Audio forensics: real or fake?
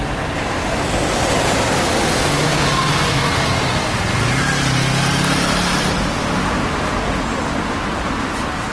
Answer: real